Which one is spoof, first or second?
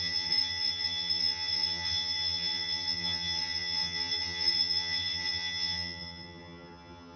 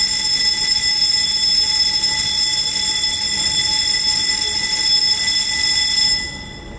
first